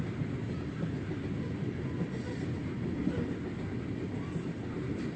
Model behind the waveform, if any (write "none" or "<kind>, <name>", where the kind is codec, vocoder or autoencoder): none